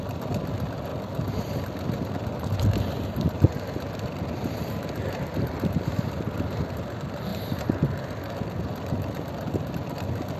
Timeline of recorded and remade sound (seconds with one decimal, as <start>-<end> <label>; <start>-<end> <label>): 0.0-0.9 recorded; 0.9-2.1 remade; 2.1-10.4 recorded